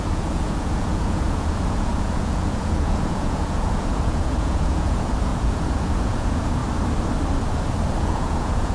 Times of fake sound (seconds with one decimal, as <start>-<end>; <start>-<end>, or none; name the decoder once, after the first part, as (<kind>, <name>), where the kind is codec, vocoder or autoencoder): 0.0-6.6 (vocoder, Vocos); 8.0-8.7

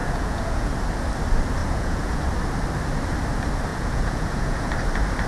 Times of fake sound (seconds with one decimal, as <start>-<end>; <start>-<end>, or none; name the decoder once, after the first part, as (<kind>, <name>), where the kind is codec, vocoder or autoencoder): 0.0-0.7 (vocoder, Vocos); 1.6-2.2; 3.7-4.7

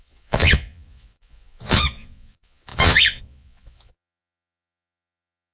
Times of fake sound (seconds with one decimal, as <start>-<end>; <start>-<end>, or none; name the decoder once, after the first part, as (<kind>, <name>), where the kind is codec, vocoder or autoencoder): 0.0-5.5 (vocoder, Vocos)